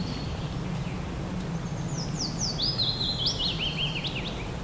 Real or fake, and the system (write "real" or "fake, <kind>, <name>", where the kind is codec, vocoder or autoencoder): real